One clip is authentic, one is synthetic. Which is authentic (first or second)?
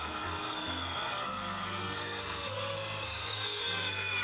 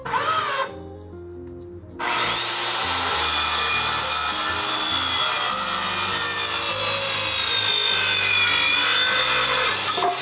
second